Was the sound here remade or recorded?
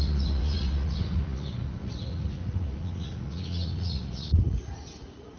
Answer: remade